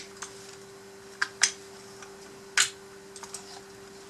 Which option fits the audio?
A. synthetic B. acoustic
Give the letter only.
B